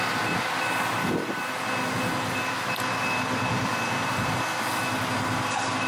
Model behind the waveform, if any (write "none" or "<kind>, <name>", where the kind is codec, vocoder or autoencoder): none